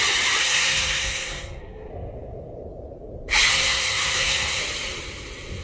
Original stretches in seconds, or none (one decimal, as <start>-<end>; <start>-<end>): 0.0-0.4; 1.9-3.5; 4.6-5.6

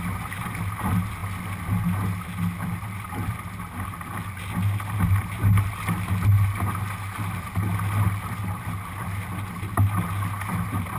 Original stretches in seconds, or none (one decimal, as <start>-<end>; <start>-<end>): 0.0-11.0